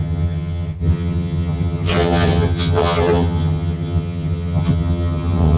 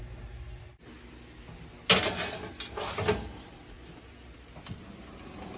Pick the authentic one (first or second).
second